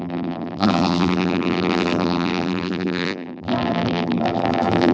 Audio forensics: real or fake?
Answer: fake